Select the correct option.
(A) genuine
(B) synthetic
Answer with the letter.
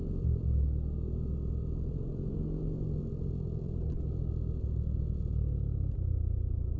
A